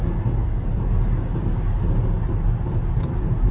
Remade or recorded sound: recorded